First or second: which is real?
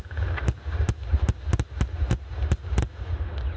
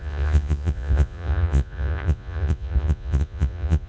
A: first